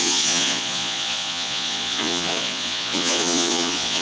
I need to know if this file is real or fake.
fake